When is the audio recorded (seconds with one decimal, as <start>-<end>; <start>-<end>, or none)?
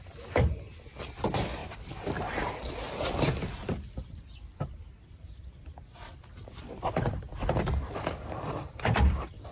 none